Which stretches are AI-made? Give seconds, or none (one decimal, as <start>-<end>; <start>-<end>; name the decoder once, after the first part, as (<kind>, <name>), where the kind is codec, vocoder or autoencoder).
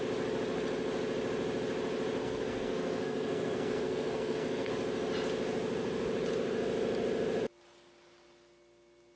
2.2-4.7 (codec, SNAC)